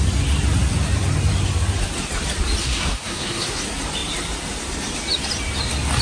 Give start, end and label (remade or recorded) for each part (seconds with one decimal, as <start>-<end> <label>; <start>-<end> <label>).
0.0-2.6 recorded; 2.6-3.6 remade; 3.6-6.0 recorded